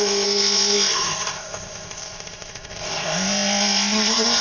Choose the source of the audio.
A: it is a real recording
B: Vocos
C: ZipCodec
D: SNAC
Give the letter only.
C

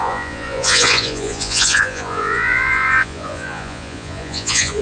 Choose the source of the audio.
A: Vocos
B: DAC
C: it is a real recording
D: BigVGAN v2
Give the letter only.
A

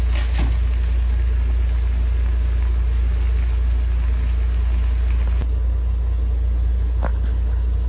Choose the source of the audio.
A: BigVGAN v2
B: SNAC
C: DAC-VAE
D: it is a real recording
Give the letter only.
D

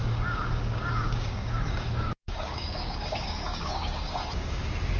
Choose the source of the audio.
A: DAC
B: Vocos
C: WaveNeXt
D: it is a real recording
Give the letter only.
A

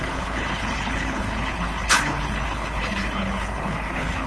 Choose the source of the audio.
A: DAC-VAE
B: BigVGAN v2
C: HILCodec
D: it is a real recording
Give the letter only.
C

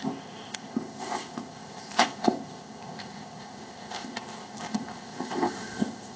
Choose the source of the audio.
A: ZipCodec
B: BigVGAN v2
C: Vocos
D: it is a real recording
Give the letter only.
A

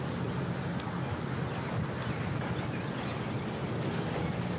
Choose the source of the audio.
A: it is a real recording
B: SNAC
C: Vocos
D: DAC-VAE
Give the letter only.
A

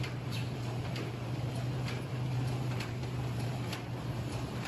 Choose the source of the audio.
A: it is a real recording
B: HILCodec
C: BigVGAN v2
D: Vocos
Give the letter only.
C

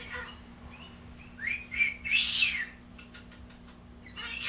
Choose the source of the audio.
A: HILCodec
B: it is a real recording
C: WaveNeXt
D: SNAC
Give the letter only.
B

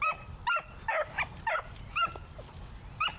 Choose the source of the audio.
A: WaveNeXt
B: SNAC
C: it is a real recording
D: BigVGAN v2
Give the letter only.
C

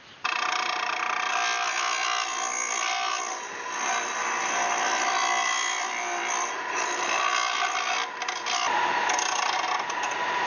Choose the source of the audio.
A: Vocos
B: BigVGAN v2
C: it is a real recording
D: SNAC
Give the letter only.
C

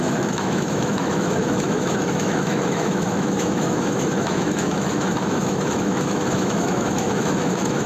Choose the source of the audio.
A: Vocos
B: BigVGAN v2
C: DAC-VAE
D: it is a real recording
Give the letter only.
C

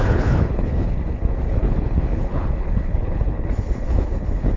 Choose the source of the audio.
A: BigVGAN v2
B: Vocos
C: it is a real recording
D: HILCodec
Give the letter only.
D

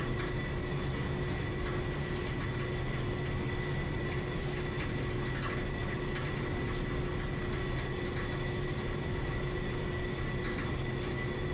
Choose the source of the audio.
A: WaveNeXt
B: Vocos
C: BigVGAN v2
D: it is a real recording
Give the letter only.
D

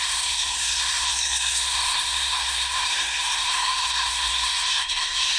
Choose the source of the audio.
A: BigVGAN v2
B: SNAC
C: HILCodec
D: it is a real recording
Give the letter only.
B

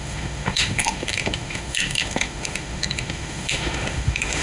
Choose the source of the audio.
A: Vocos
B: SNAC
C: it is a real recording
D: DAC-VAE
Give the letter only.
D